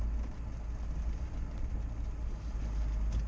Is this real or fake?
real